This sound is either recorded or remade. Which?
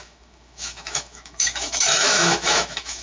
remade